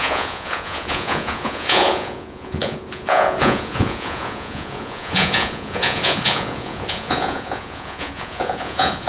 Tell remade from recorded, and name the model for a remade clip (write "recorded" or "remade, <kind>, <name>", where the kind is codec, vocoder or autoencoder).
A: remade, vocoder, Vocos